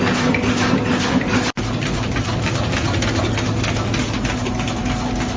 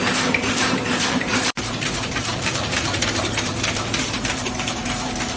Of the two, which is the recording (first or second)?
first